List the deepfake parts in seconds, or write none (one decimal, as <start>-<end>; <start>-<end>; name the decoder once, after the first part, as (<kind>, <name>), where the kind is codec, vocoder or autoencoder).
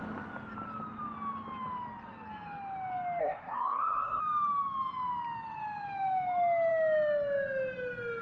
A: 3.2-4.2 (codec, SNAC)